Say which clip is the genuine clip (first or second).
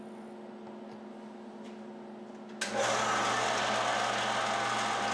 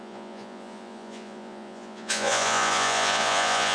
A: first